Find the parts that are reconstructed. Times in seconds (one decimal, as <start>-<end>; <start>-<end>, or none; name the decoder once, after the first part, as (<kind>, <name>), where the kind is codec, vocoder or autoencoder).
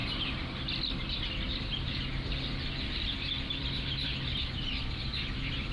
3.4-5.7 (vocoder, BigVGAN v2)